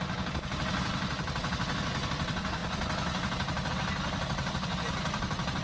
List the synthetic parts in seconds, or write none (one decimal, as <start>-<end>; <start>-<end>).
0.0-1.4; 2.1-2.6; 3.7-5.6